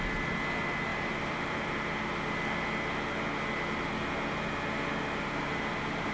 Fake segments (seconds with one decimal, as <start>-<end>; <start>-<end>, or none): 0.9-1.7